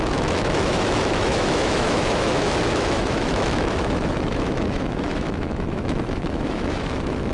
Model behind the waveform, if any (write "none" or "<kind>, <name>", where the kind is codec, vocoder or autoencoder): autoencoder, DAC-VAE